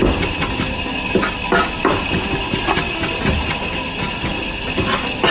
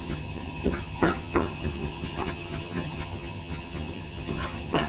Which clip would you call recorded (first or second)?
first